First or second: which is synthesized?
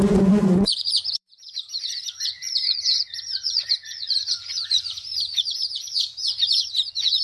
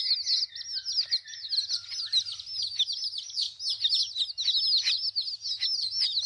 first